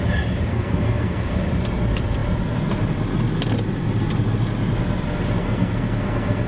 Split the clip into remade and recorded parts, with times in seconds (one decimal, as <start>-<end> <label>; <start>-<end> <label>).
0.0-0.5 recorded; 0.5-1.4 remade; 1.4-5.4 recorded; 5.4-6.5 remade